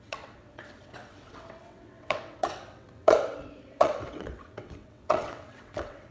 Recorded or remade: remade